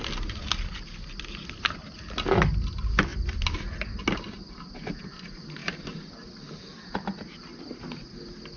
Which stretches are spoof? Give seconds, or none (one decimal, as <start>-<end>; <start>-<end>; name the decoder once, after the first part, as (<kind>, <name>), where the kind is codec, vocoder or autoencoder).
3.1-3.8 (vocoder, BigVGAN v2); 5.6-6.7